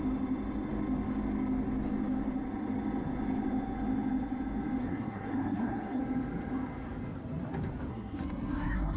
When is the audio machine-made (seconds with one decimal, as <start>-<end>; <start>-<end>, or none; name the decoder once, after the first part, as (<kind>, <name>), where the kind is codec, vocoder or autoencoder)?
4.8-6.0 (codec, SNAC); 7.9-9.0